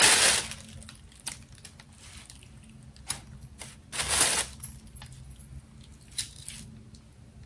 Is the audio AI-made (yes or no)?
no